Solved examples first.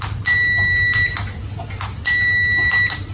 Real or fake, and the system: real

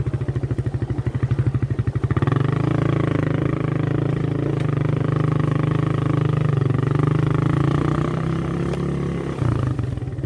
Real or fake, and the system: real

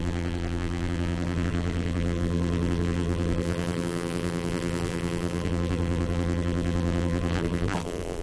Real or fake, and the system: fake, vocoder, BigVGAN v2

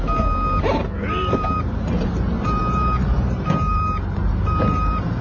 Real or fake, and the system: fake, vocoder, BigVGAN v2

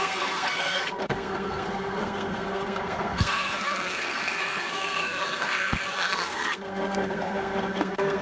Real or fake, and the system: fake, codec, SNAC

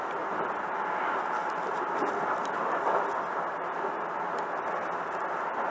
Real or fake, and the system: real